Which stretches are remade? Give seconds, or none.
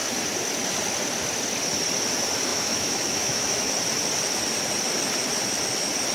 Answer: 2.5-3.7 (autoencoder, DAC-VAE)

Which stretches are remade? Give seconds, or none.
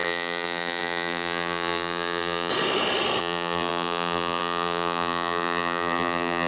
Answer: 0.0-2.5 (vocoder, BigVGAN v2); 3.2-6.5